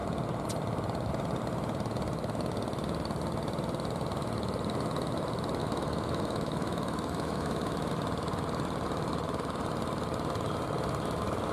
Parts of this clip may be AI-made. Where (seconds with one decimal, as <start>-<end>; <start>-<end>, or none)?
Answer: 5.6-7.9